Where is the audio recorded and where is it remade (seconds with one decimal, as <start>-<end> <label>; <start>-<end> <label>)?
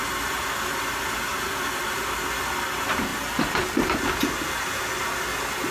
0.0-5.7 recorded